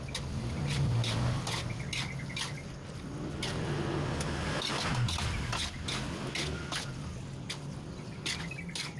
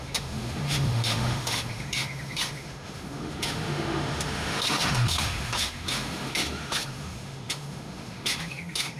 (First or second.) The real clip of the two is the first